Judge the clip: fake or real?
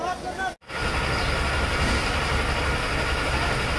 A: real